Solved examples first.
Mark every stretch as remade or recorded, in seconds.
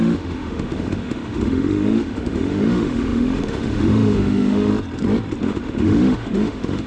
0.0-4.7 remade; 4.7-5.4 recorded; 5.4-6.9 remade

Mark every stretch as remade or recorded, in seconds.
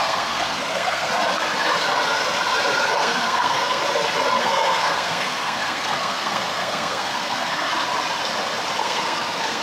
0.0-1.1 remade; 1.1-2.8 recorded; 2.8-3.8 remade; 3.8-4.4 recorded; 4.4-7.7 remade; 7.7-8.8 recorded; 8.8-9.6 remade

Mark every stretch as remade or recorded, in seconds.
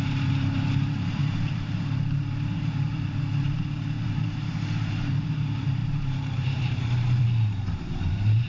0.0-8.5 remade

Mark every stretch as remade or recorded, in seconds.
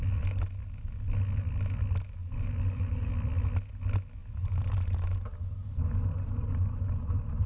0.0-2.2 recorded; 2.2-3.1 remade; 3.1-4.2 recorded; 4.2-6.8 remade; 6.8-7.5 recorded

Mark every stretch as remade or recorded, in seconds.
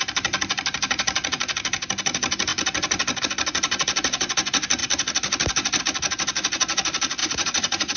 0.0-7.2 recorded; 7.2-8.0 remade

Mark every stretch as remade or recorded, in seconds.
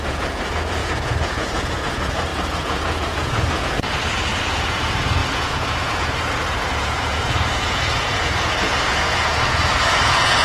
0.0-10.4 remade